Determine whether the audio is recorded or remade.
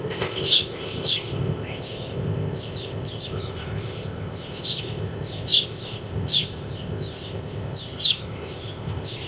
remade